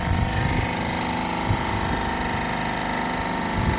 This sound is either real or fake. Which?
real